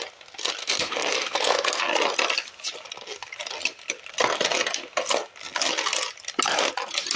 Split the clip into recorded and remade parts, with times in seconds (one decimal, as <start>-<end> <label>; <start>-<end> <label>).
0.0-0.6 recorded; 0.6-1.8 remade; 1.8-7.2 recorded